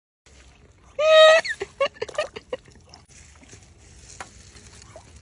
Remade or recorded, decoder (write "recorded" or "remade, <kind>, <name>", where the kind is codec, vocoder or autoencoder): recorded